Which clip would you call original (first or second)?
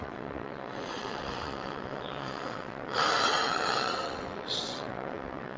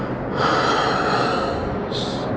second